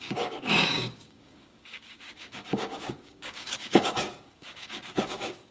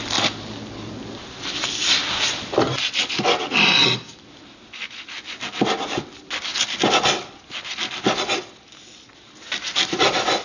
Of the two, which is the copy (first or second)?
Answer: first